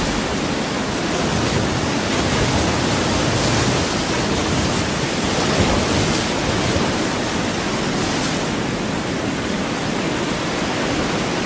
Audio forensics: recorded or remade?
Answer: recorded